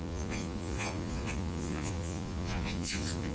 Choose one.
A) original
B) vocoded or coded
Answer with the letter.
B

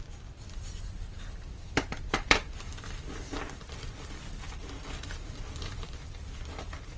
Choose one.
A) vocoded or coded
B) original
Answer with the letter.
A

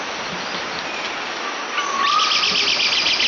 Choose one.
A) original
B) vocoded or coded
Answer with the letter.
A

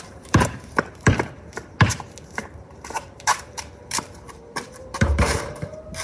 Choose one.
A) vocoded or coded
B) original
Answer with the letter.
A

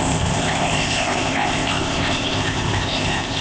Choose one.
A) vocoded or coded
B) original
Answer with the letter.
A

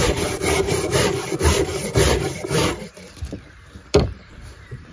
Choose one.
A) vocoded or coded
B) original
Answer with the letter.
A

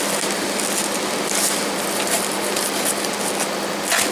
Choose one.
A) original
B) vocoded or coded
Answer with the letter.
A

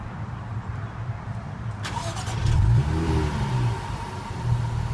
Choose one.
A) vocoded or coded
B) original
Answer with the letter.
A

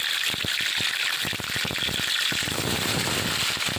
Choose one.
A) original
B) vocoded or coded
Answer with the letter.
A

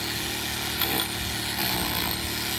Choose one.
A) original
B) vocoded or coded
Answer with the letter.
A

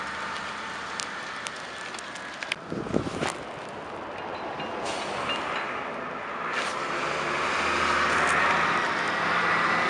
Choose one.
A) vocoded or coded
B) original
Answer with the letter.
B